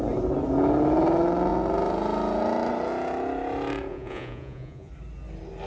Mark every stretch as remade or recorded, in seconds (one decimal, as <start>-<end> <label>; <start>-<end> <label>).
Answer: 0.0-3.9 recorded; 3.9-4.9 remade; 4.9-5.7 recorded